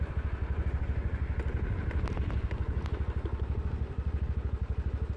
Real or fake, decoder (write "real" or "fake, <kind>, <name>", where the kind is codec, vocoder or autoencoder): real